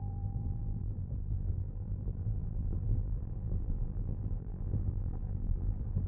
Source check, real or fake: fake